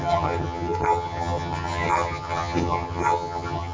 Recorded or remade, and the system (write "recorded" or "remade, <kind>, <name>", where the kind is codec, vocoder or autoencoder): remade, vocoder, HiFi-GAN